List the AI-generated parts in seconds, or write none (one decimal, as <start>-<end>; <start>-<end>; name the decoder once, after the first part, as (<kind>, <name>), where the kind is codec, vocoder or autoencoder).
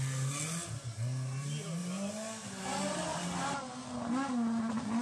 none